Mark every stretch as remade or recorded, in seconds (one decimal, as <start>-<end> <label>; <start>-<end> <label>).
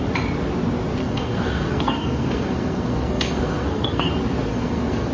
0.0-1.0 recorded; 1.0-4.1 remade; 4.1-4.5 recorded; 4.5-5.1 remade